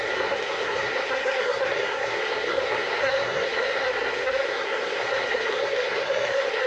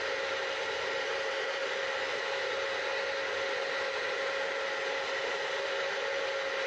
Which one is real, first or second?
second